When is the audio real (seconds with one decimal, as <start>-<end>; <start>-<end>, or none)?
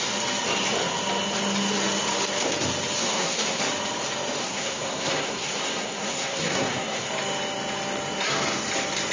0.0-3.0; 3.6-4.4; 7.1-9.1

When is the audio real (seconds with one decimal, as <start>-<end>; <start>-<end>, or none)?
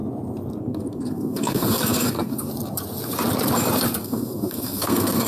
0.0-0.6; 2.5-4.0